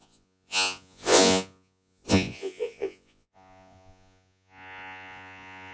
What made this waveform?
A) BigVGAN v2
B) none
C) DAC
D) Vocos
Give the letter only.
D